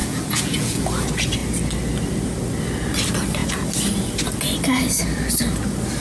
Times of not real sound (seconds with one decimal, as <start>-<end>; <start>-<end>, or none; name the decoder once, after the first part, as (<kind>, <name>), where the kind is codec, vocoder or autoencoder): 0.0-0.8 (vocoder, Vocos)